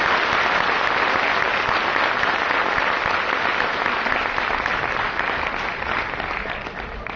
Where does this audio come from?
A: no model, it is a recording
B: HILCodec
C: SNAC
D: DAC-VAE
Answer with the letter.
A